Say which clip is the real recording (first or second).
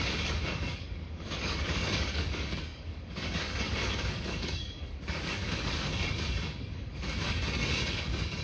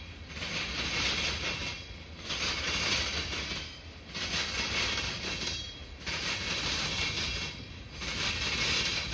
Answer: second